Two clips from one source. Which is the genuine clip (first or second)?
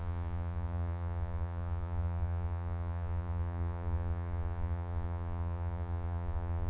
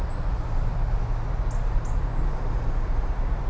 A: second